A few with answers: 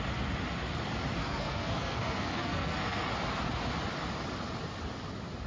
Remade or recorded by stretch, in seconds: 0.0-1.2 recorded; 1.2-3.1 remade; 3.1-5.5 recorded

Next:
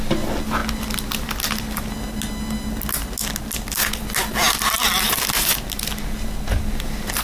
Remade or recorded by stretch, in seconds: 0.0-7.2 recorded

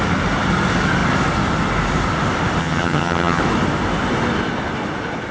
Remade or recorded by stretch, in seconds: 0.0-2.6 recorded; 2.6-3.4 remade; 3.4-5.3 recorded

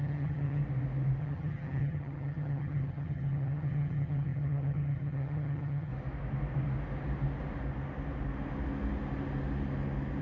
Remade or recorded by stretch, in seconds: 0.0-0.6 remade; 0.6-1.2 recorded; 1.2-5.9 remade; 5.9-10.2 recorded